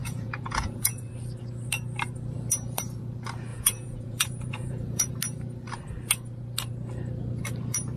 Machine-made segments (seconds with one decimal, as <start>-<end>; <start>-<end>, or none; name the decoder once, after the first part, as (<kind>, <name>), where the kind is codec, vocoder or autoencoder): 0.0-1.1 (vocoder, Vocos); 3.5-5.1